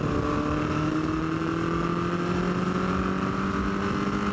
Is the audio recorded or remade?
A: recorded